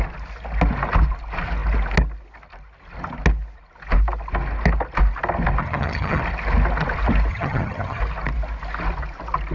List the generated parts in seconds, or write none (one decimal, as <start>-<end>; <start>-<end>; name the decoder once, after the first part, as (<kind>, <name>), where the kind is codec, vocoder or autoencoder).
5.6-6.2 (vocoder, HiFi-GAN); 7.3-8.0